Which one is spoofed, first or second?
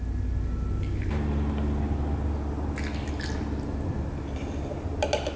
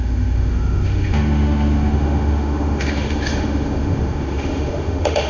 second